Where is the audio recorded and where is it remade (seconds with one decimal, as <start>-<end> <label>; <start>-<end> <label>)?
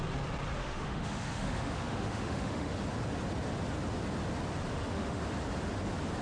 0.0-0.6 recorded; 0.6-2.8 remade; 2.8-4.7 recorded; 4.7-5.2 remade; 5.2-6.2 recorded